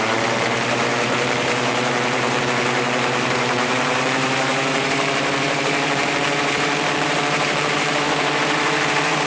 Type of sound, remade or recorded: remade